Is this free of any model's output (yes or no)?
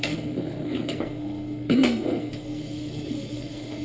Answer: no